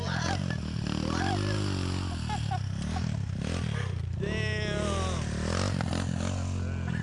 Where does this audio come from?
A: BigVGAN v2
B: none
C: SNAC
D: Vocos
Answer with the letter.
B